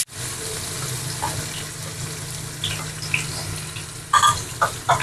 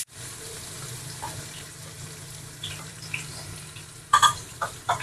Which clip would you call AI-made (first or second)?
second